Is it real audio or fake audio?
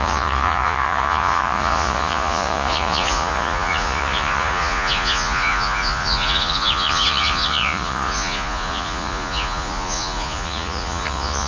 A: fake